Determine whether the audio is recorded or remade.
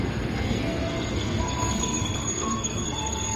remade